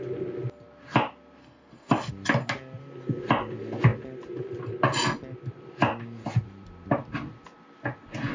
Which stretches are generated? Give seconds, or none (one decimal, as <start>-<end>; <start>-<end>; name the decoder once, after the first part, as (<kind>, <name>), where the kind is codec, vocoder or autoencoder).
1.4-2.1 (codec, SNAC)